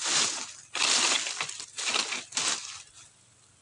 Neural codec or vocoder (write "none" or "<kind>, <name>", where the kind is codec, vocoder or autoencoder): none